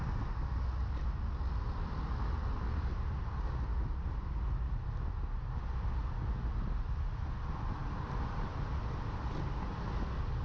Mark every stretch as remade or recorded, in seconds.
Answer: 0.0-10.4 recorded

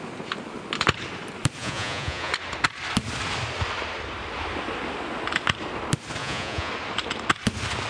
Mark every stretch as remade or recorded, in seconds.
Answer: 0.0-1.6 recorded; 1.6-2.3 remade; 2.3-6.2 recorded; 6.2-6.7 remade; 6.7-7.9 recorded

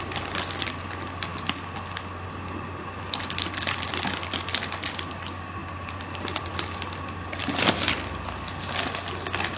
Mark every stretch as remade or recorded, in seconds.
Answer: 0.0-9.6 recorded

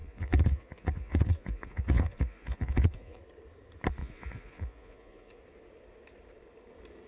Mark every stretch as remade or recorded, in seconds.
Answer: 0.0-3.2 remade; 3.2-4.0 recorded; 4.0-5.4 remade; 5.4-7.1 recorded